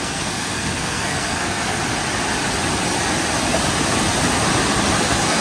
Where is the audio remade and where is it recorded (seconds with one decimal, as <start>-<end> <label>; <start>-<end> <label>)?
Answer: 0.0-1.8 remade; 1.8-5.0 recorded; 5.0-5.4 remade